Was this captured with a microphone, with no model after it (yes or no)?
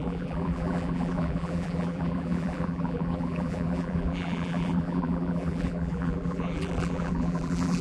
no